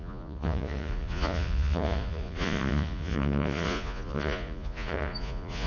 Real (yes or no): no